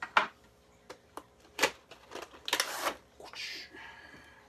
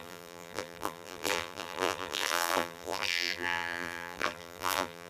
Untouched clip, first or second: first